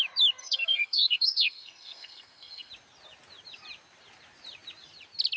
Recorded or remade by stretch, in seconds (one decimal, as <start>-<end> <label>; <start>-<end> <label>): 0.0-0.4 recorded; 0.4-2.7 remade; 2.7-5.4 recorded